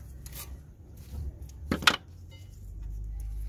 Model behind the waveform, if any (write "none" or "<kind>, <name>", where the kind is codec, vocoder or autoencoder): none